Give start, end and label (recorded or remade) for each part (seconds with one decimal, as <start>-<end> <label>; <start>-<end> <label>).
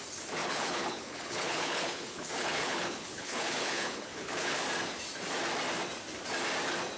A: 0.0-0.4 recorded; 0.4-4.6 remade; 4.6-7.0 recorded